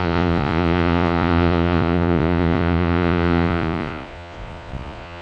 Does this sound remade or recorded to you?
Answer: remade